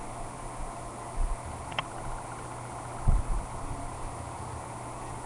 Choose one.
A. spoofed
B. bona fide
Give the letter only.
B